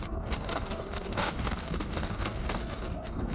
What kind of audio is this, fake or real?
fake